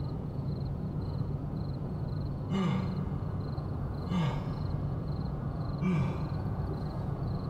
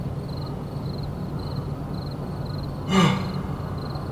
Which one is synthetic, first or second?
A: first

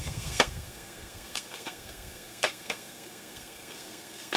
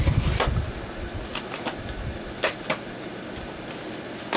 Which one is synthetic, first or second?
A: first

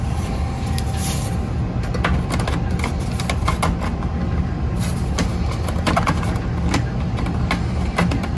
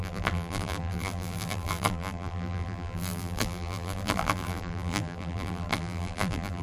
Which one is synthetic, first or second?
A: second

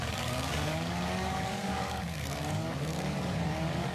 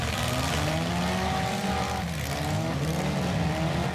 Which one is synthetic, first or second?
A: first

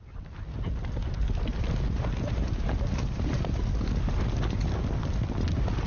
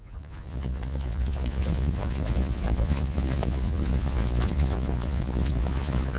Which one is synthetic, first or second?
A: second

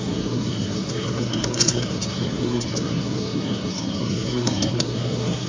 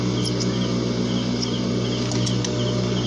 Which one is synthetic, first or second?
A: first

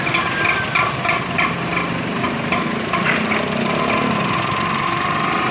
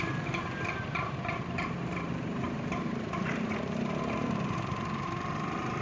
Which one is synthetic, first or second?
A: second